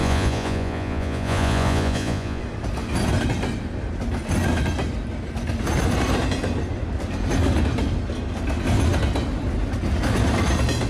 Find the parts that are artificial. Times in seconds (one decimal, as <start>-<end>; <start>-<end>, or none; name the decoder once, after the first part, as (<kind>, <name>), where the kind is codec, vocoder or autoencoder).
0.0-2.4 (vocoder, Vocos)